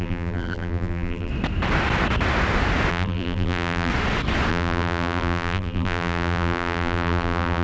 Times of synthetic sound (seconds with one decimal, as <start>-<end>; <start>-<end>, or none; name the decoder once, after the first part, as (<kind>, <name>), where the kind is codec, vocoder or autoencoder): 0.0-1.3 (vocoder, BigVGAN v2); 2.9-3.9; 4.5-7.6